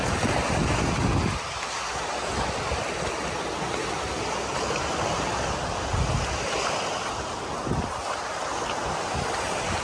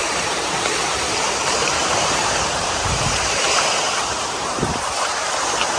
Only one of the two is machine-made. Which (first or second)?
second